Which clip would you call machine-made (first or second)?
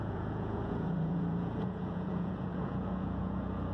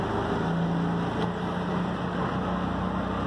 first